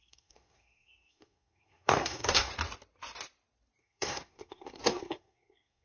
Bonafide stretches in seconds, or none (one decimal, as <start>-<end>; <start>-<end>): 2.5-3.8